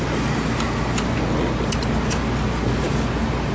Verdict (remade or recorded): recorded